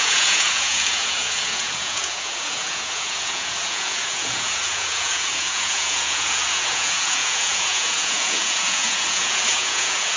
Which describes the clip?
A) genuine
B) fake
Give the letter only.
B